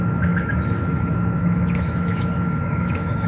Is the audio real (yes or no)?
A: no